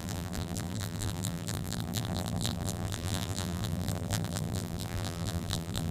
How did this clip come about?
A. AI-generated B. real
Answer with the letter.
A